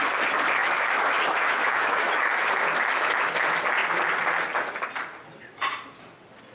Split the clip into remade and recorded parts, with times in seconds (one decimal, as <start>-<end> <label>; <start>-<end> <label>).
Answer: 0.0-0.6 recorded; 0.6-2.5 remade; 2.5-6.5 recorded